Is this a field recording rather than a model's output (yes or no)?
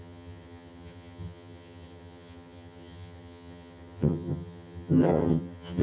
no